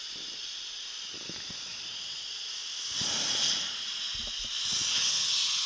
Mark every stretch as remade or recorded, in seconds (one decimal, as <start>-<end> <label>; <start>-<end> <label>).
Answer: 0.0-5.7 recorded